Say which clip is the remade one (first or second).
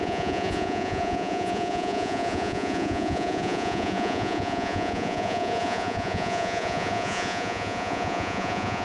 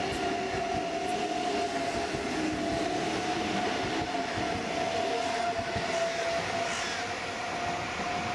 first